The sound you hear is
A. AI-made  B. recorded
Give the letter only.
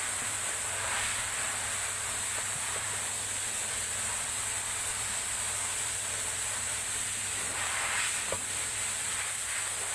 A